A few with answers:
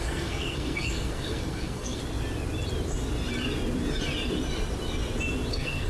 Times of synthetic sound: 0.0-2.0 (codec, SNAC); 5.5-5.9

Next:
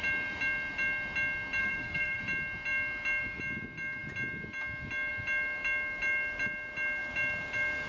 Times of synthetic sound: 1.6-2.2 (codec, SNAC)

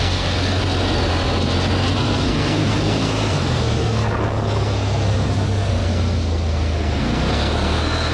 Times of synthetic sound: 0.0-0.6 (codec, SNAC); 1.9-8.1

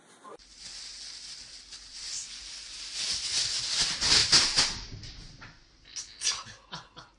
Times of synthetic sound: none

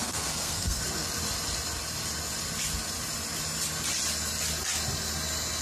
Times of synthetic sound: 0.0-0.8 (codec, SNAC)

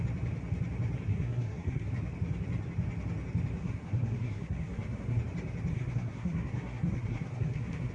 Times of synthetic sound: 1.1-1.9 (codec, SNAC); 3.6-5.2; 5.7-7.9